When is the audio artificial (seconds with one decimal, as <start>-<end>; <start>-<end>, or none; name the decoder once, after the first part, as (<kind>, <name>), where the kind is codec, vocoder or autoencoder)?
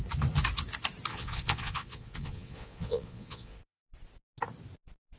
1.1-3.8 (vocoder, Vocos)